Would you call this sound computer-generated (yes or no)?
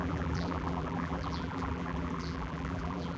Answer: yes